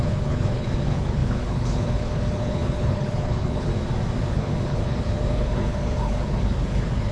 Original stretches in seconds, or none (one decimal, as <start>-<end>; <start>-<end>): 3.7-4.3